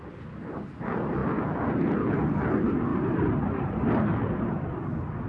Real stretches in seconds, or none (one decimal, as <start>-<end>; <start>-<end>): 0.0-2.9; 3.9-5.3